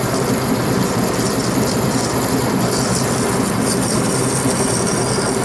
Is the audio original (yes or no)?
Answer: yes